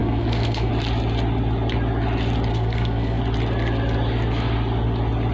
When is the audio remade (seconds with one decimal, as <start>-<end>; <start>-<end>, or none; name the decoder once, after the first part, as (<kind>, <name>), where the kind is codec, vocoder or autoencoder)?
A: 0.0-0.7 (codec, SNAC); 2.5-3.2